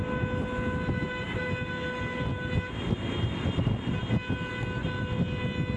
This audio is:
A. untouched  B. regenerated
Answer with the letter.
A